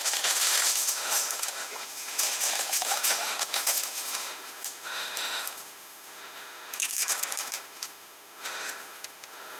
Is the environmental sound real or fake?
fake